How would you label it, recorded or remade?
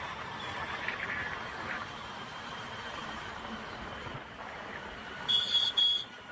remade